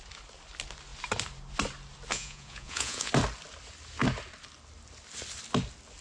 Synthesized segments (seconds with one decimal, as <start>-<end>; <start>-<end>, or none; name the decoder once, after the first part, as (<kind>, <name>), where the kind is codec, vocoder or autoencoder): 2.1-3.1 (vocoder, Vocos)